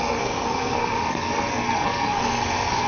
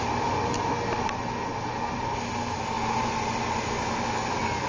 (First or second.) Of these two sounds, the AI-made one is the first